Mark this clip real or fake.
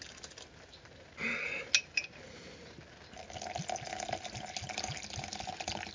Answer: real